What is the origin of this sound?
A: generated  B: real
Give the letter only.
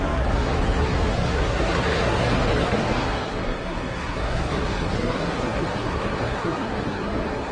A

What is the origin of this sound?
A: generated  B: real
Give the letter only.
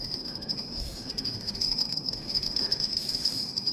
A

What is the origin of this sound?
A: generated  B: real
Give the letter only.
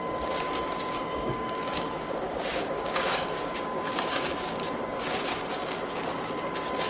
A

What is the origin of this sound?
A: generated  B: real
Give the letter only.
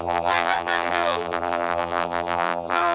A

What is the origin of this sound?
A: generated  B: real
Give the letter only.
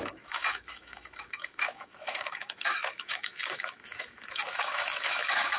A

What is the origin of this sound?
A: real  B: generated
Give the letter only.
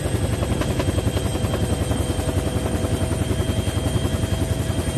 A